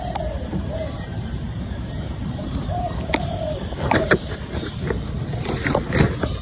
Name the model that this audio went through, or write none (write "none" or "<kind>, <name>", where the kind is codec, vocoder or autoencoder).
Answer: vocoder, BigVGAN v2